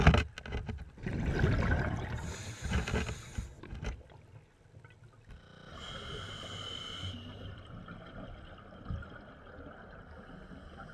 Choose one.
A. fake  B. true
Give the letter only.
B